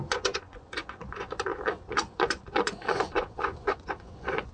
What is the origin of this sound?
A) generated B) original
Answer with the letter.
A